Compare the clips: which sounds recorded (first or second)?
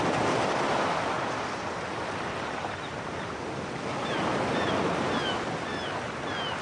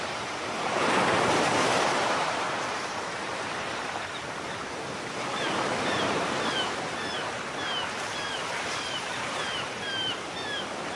first